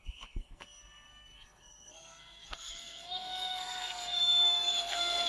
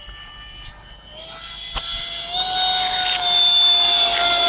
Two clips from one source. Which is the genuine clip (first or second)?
second